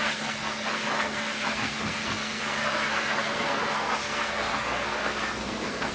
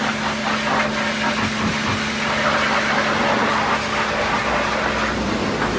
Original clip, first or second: second